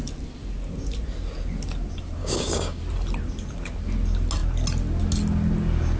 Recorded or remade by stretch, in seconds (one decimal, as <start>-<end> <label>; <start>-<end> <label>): 0.0-2.2 recorded; 2.2-2.8 remade; 2.8-6.0 recorded